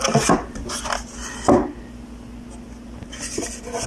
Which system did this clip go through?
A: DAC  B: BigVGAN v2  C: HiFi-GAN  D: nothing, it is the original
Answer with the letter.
D